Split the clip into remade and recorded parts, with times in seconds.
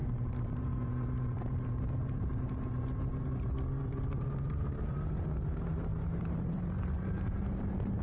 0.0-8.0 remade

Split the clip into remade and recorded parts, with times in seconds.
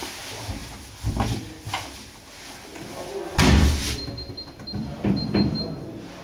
0.0-0.6 recorded; 0.6-1.5 remade; 1.5-4.8 recorded; 4.8-5.3 remade; 5.3-6.2 recorded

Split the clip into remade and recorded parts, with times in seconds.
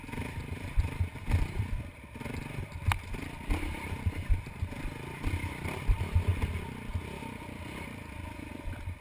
0.0-9.0 remade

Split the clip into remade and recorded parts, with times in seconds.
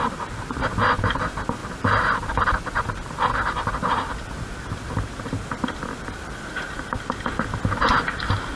0.0-1.6 recorded; 1.6-6.8 remade; 6.8-8.6 recorded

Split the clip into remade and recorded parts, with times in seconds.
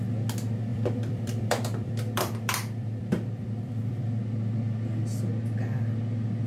0.0-0.7 recorded; 0.7-4.2 remade; 4.2-6.5 recorded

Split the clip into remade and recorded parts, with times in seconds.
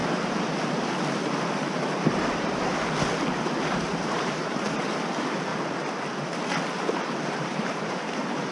0.0-1.6 recorded; 1.6-2.7 remade; 2.7-3.6 recorded; 3.6-5.5 remade; 5.5-7.3 recorded; 7.3-8.5 remade